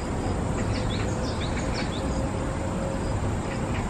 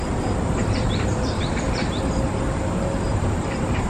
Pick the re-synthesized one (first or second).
second